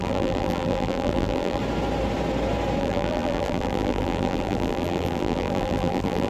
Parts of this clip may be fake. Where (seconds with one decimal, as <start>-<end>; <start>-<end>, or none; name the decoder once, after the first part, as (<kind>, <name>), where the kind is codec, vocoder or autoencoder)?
0.0-1.6 (vocoder, BigVGAN v2); 2.8-6.3